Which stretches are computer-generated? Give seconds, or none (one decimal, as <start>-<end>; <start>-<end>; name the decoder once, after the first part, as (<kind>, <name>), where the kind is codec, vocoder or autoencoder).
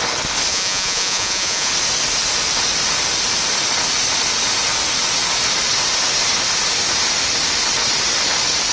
0.5-1.7 (vocoder, Vocos)